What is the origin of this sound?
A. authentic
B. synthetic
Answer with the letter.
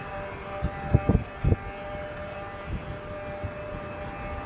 A